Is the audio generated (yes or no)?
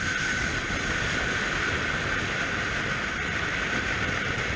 no